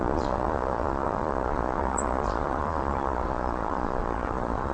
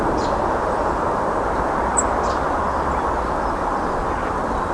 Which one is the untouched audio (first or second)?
second